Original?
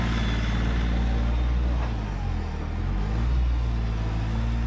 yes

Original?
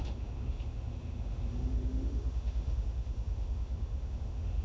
no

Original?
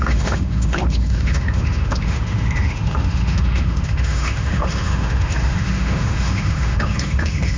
no